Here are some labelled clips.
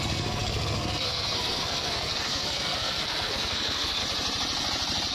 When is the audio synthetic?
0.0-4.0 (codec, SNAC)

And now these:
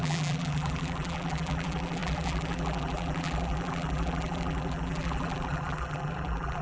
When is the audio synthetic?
0.0-6.6 (vocoder, BigVGAN v2)